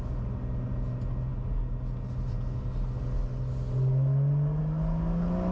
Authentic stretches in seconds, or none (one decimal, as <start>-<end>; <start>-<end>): 0.0-5.5